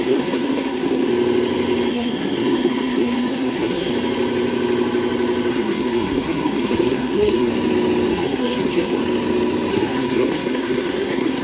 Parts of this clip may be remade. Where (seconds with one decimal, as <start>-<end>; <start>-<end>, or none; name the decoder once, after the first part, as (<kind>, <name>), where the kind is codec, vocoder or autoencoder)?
0.0-1.1 (codec, SNAC); 1.9-3.9; 5.5-7.5; 8.1-9.0; 9.7-11.4